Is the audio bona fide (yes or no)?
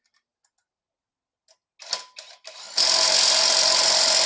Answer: yes